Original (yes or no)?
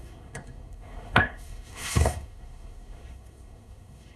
no